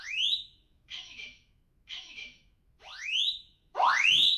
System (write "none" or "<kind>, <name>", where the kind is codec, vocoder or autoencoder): autoencoder, DAC-VAE